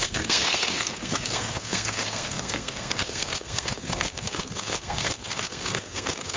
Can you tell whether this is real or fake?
fake